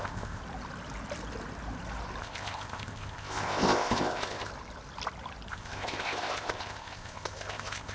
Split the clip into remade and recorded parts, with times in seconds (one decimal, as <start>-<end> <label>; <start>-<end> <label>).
0.0-0.4 remade; 0.4-2.2 recorded; 2.2-4.5 remade; 4.5-5.5 recorded; 5.5-7.9 remade